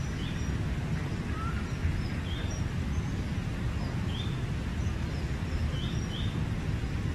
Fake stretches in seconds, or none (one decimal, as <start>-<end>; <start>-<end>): 2.1-3.8